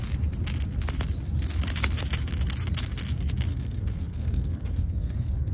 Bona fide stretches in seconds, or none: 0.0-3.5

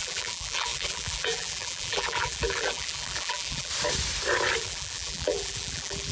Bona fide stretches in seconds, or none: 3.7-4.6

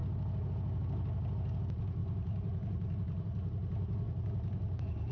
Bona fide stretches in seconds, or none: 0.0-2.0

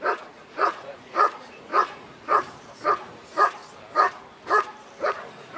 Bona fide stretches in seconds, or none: 3.6-5.1

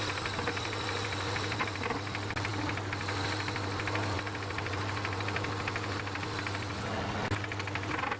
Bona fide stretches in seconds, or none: 0.0-8.2